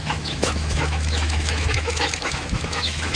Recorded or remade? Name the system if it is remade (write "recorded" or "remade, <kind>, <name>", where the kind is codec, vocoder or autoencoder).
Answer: remade, autoencoder, DAC-VAE